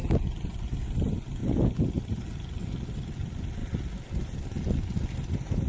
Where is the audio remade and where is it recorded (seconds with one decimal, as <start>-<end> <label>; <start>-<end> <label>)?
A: 0.0-5.7 recorded